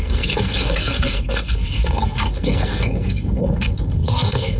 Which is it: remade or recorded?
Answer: remade